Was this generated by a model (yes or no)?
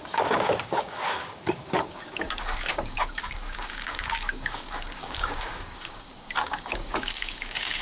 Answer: yes